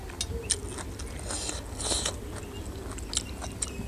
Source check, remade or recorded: recorded